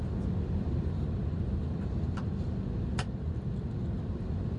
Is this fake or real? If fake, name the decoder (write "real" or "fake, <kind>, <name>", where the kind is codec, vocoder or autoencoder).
real